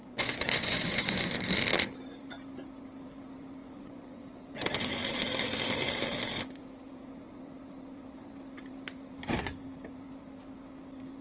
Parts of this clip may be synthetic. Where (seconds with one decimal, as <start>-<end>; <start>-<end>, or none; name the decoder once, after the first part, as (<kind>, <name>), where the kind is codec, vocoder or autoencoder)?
0.0-1.3 (vocoder, Vocos); 3.6-4.4